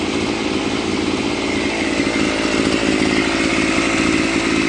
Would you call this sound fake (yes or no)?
no